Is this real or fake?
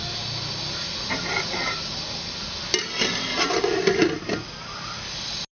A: real